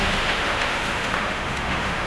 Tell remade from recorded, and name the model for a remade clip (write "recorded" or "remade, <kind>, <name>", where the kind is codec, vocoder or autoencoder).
remade, autoencoder, DAC-VAE